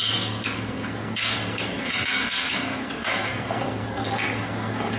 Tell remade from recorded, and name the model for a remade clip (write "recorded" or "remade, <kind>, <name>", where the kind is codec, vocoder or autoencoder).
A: remade, codec, SNAC